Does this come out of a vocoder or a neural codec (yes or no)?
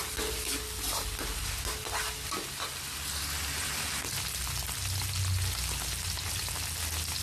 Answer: no